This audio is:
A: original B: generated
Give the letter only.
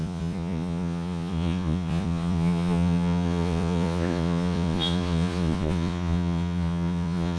B